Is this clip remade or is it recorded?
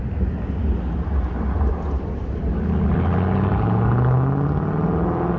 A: recorded